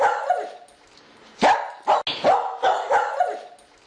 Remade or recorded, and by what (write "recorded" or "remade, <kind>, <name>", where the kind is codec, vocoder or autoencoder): recorded